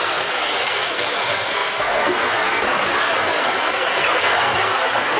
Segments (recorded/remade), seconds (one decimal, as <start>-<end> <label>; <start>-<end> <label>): 0.0-5.2 remade